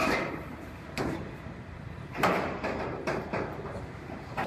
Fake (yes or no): yes